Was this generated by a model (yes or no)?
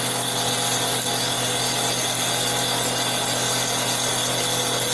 no